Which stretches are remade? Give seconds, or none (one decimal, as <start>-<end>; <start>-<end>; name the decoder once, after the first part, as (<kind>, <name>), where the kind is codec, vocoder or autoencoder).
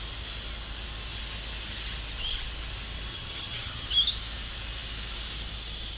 3.1-3.9 (vocoder, HiFi-GAN)